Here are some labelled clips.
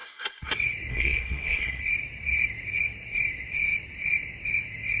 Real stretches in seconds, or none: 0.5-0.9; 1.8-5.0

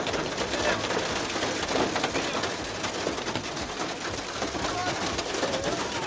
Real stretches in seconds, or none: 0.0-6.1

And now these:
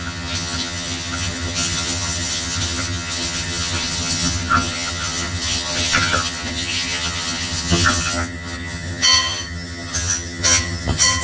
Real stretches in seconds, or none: none

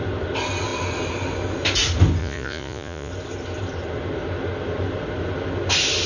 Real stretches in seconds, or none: 0.0-2.2; 3.1-6.1